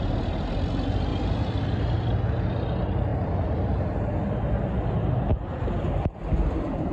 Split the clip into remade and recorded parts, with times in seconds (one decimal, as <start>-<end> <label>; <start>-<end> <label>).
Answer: 0.0-6.9 recorded